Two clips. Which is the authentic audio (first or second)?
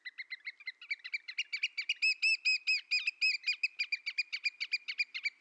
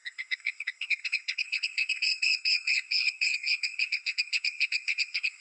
first